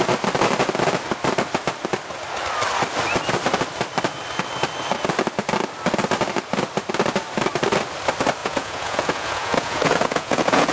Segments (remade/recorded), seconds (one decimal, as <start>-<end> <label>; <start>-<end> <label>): 0.0-8.4 recorded; 8.4-10.7 remade